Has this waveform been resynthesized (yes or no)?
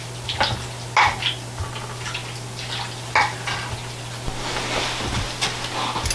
no